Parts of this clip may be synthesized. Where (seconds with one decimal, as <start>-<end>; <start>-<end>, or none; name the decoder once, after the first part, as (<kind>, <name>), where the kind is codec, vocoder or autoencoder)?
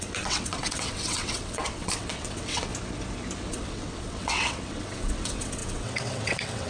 0.0-2.7 (vocoder, WaveNeXt); 3.5-6.7